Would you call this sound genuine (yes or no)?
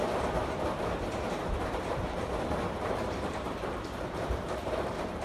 no